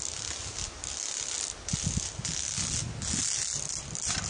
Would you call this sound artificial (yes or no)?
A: no